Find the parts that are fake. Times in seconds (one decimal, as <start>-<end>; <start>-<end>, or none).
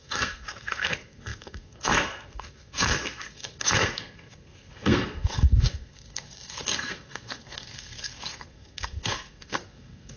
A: 0.0-10.2